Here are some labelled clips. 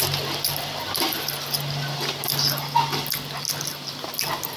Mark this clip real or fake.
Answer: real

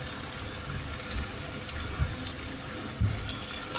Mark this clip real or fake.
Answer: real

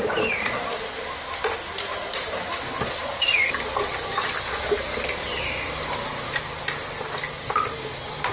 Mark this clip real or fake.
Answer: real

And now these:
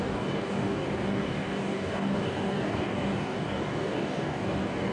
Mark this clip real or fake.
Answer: fake